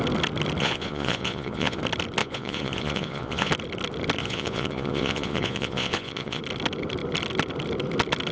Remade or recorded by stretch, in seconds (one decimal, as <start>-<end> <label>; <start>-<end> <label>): 0.0-0.6 recorded; 0.6-1.8 remade; 1.8-2.2 recorded; 2.2-3.5 remade; 3.5-4.2 recorded; 4.2-6.4 remade; 6.4-8.3 recorded